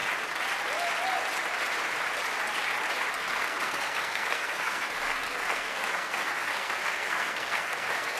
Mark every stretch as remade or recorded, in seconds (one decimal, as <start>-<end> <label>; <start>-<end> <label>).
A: 0.0-3.1 recorded; 3.1-8.2 remade